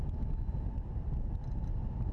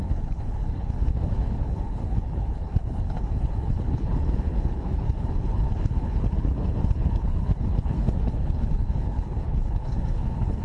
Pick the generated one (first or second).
second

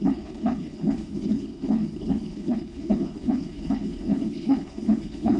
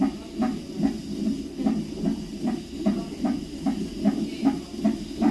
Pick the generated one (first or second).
first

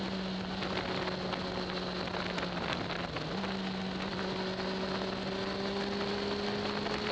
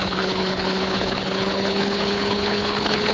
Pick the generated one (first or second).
second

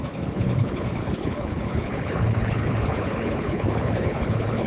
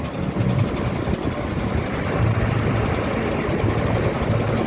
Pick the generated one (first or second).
first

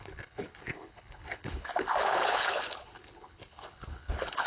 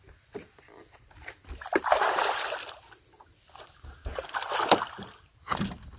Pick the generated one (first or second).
first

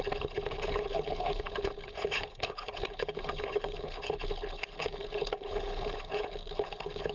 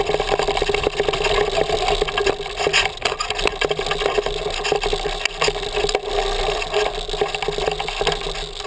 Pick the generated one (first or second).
first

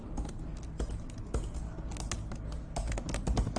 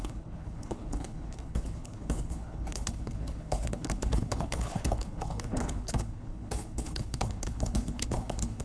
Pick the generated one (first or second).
second